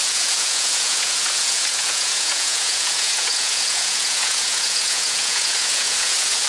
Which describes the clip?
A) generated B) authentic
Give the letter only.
A